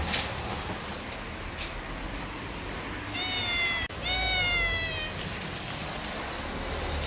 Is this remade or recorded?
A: recorded